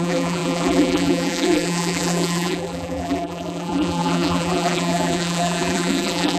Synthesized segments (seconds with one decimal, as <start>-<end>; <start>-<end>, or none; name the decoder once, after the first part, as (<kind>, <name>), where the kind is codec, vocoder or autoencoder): 0.0-6.4 (vocoder, BigVGAN v2)